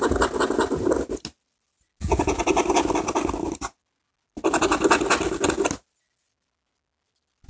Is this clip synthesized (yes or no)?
no